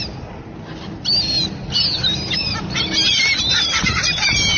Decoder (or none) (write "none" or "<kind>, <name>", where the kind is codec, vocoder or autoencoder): none